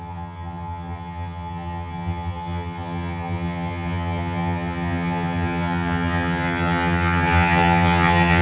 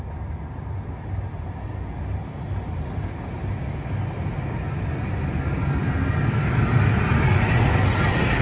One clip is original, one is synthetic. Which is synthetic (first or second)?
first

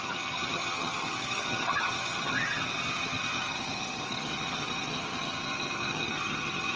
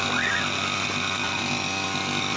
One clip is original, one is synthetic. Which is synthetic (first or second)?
first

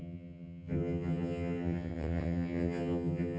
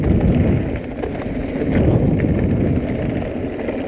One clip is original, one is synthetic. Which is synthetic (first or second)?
first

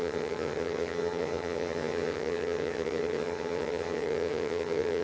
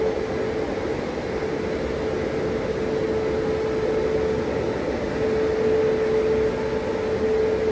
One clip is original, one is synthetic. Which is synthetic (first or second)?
first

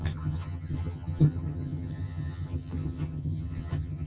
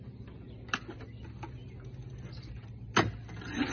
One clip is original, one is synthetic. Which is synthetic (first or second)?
first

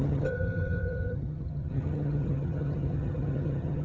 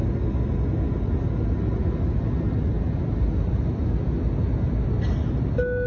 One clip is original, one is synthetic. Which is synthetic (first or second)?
first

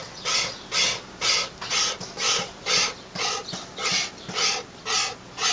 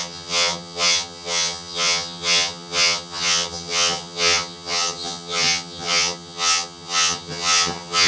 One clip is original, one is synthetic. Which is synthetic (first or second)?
second